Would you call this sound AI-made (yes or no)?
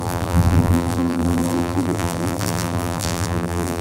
yes